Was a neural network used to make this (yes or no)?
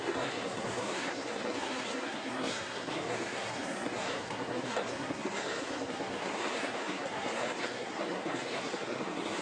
yes